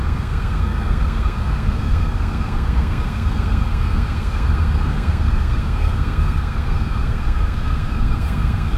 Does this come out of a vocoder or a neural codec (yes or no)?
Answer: yes